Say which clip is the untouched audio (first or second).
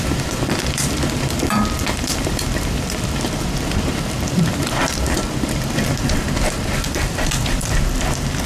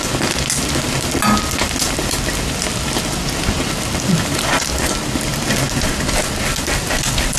second